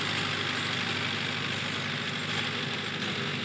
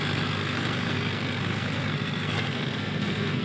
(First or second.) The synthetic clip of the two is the second